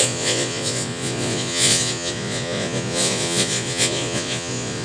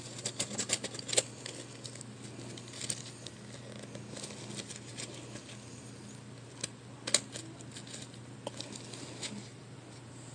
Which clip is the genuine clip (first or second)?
second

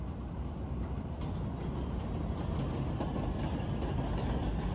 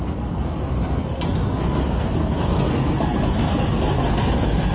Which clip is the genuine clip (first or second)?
first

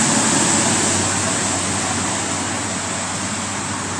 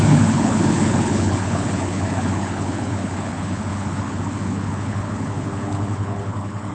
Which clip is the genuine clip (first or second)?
first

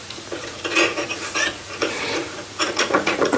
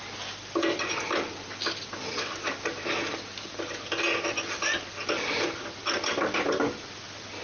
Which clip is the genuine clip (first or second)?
second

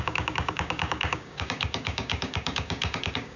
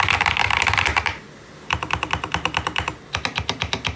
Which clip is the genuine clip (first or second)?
second